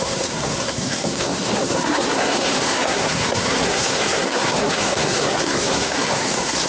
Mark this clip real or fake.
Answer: fake